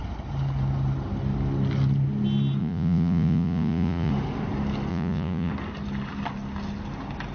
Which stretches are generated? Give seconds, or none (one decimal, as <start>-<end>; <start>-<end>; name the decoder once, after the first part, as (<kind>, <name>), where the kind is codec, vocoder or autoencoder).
2.6-4.1 (vocoder, Vocos); 4.9-5.5